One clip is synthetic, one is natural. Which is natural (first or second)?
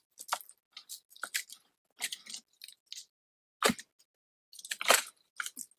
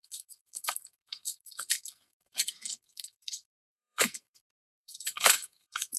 first